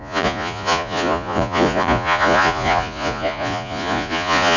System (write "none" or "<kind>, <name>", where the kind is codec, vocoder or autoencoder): vocoder, Vocos